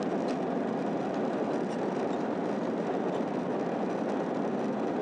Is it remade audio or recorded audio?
recorded